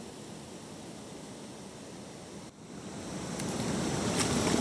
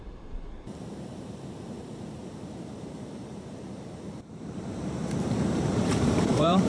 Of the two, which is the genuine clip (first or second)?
first